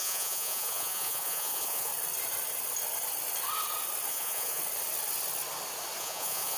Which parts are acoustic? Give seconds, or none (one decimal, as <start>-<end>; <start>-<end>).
1.9-4.1; 4.6-6.0